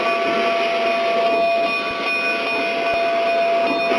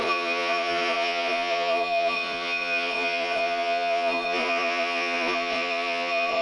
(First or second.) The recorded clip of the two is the first